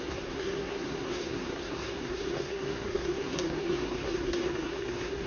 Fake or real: fake